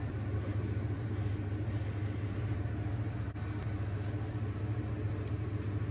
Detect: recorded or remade recorded